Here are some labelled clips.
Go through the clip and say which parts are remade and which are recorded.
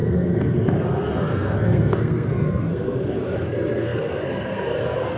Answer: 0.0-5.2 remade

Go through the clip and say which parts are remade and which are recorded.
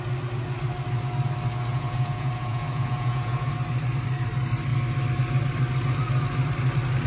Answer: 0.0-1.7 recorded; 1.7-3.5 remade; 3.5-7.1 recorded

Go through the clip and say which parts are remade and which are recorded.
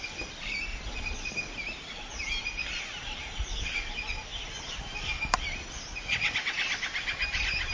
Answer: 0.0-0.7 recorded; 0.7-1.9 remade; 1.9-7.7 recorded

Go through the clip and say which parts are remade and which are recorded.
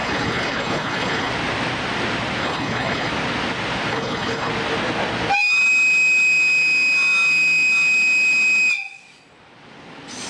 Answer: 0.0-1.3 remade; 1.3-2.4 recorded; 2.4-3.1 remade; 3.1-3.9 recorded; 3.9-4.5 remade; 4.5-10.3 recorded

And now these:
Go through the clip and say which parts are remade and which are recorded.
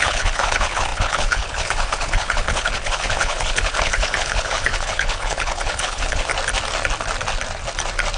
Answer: 0.0-6.3 remade; 6.3-8.2 recorded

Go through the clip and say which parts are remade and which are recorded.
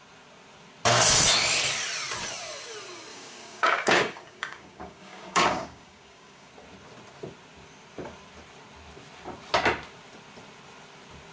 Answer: 0.0-3.1 recorded; 3.1-6.5 remade; 6.5-11.3 recorded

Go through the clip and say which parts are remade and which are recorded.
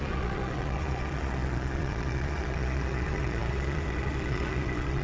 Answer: 0.0-5.0 remade